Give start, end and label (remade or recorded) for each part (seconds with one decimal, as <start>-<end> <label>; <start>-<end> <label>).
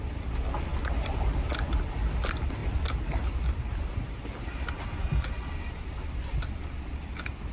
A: 0.0-7.5 recorded